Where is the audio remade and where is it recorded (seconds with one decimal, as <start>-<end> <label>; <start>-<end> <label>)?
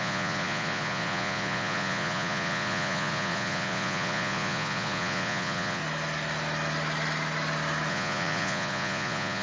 0.0-5.8 remade; 5.8-7.9 recorded; 7.9-9.4 remade